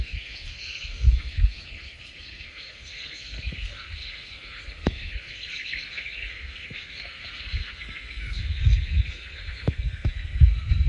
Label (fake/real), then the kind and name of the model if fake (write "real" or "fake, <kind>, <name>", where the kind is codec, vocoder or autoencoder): fake, codec, SNAC